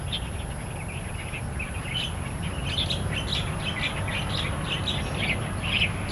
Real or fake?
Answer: real